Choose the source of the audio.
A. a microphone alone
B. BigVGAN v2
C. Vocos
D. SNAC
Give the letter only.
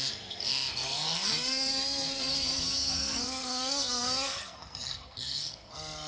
D